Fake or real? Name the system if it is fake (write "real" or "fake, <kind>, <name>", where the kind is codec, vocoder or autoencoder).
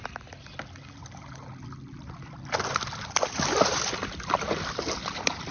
real